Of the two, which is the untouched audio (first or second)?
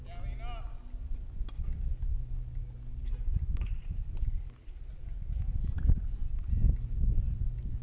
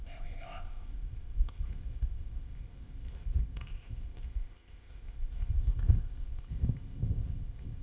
first